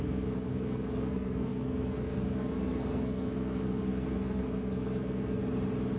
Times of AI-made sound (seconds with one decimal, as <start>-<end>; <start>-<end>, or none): 0.0-5.4